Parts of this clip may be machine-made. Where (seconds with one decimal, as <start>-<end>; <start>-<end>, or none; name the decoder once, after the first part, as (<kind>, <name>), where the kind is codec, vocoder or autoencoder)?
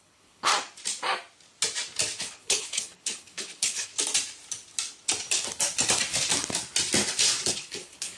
0.0-0.5 (codec, HILCodec); 2.2-3.9; 7.5-8.2